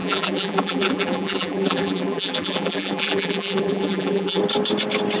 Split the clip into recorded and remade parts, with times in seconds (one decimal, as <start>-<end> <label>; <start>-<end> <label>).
0.0-4.4 remade; 4.4-5.2 recorded